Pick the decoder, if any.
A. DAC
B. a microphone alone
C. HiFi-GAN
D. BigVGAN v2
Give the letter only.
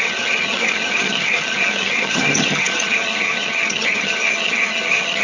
C